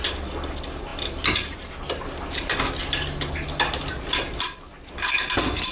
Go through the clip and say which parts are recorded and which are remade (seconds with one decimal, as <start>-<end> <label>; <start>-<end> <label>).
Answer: 0.0-5.7 recorded